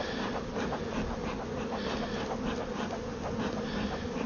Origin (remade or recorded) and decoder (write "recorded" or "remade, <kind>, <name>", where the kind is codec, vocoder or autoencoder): recorded